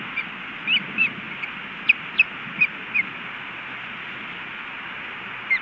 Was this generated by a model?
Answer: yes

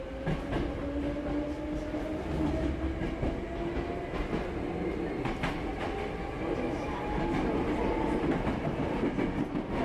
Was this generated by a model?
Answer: no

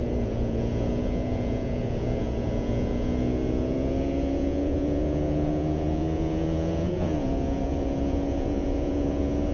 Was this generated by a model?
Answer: yes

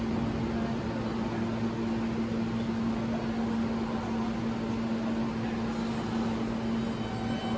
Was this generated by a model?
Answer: no